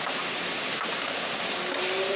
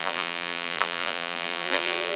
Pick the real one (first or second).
first